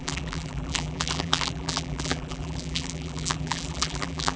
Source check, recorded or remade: remade